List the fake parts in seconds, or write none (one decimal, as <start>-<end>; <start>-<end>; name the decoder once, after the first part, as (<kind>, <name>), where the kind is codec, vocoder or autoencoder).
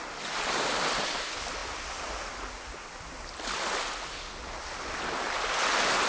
none